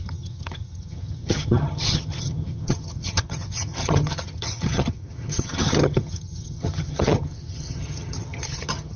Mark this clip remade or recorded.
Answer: remade